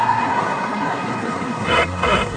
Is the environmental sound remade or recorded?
remade